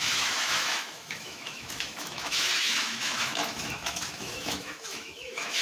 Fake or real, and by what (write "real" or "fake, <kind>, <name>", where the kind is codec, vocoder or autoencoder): fake, autoencoder, DAC-VAE